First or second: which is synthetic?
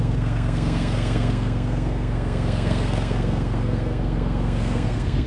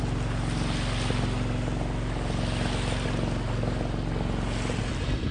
first